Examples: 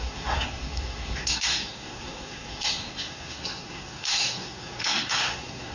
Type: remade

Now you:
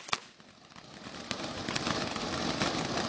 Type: recorded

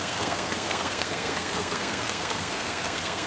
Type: remade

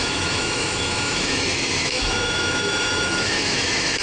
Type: remade